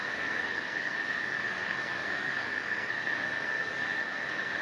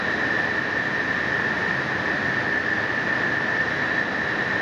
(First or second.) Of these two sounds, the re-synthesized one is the first